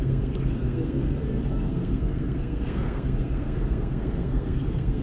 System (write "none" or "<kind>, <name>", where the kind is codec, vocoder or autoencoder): codec, SNAC